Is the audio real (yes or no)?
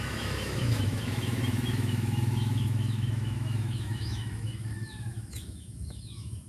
no